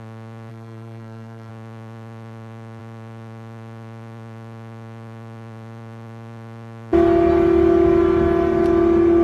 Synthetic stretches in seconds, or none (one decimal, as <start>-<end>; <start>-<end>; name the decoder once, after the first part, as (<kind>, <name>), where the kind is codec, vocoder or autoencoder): 0.5-1.5 (codec, SNAC)